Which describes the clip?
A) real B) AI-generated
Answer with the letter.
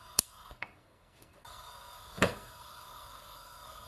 B